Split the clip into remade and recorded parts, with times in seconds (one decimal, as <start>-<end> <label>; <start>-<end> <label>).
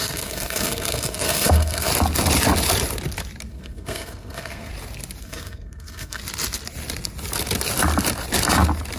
0.0-1.9 remade; 1.9-3.5 recorded; 3.5-4.7 remade; 4.7-5.2 recorded; 5.2-6.2 remade; 6.2-9.0 recorded